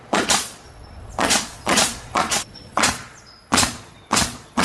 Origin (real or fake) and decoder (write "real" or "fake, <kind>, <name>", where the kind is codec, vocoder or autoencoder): fake, vocoder, Vocos